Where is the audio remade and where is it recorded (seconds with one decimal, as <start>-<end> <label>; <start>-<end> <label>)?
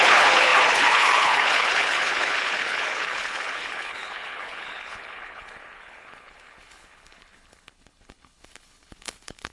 0.0-9.5 remade